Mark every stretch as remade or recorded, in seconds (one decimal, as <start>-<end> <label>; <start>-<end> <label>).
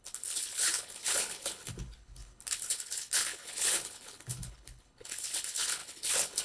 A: 0.0-6.4 remade